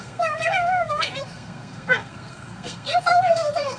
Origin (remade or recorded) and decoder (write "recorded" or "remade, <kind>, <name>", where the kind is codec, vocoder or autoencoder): remade, codec, SNAC